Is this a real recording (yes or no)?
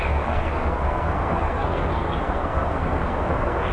no